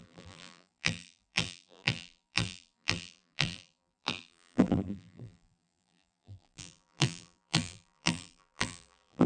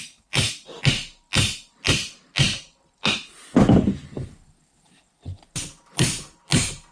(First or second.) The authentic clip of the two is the second